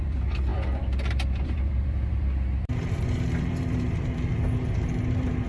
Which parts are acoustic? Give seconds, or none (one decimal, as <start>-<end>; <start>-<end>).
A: 4.3-5.1